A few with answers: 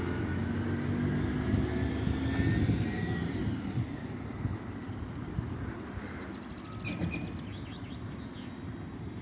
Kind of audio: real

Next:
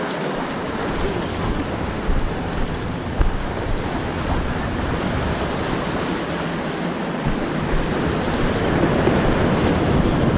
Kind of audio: real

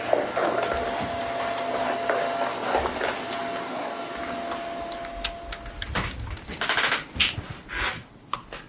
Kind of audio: real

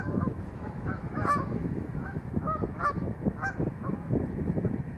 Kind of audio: fake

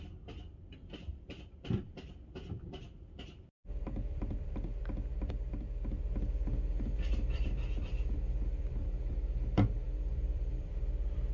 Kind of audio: fake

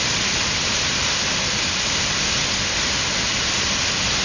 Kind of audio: real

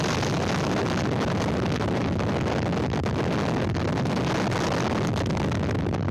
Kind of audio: real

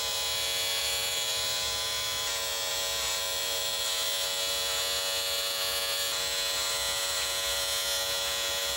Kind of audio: fake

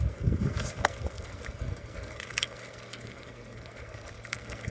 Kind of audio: fake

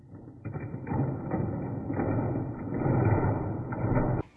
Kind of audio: real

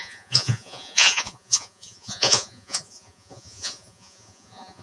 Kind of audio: fake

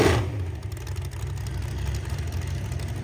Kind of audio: real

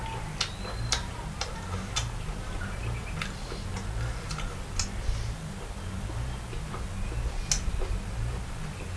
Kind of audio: real